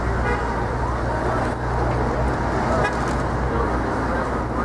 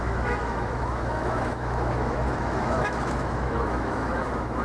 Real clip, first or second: first